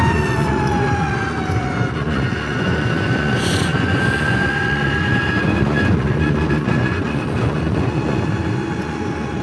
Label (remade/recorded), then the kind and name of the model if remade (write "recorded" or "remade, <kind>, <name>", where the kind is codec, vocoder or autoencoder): remade, vocoder, Vocos